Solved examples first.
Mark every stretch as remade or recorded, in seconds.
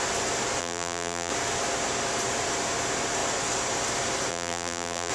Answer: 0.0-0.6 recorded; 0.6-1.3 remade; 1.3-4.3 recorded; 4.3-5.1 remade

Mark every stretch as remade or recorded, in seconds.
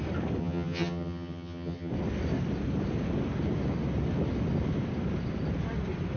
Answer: 0.0-0.4 recorded; 0.4-1.9 remade; 1.9-6.2 recorded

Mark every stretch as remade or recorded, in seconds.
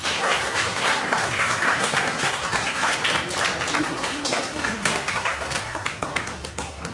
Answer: 0.0-3.0 remade; 3.0-3.8 recorded; 3.8-6.9 remade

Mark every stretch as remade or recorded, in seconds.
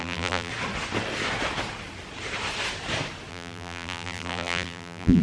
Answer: 0.0-0.5 remade; 0.5-3.3 recorded; 3.3-5.2 remade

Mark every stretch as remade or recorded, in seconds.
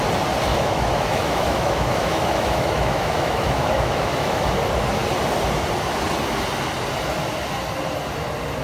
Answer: 0.0-0.5 recorded; 0.5-4.5 remade; 4.5-8.6 recorded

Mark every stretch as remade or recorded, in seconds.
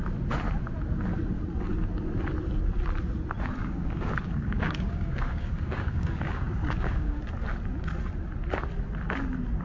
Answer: 0.0-3.6 recorded; 3.6-7.2 remade; 7.2-9.6 recorded